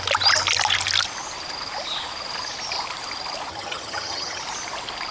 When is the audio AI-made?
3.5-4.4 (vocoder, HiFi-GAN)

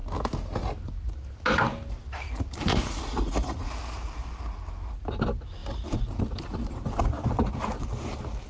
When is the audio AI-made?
2.7-3.7 (vocoder, Vocos)

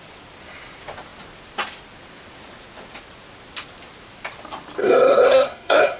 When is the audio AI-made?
4.8-6.0 (codec, SNAC)

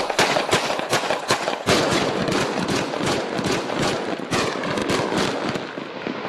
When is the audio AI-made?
0.0-4.8 (vocoder, Vocos)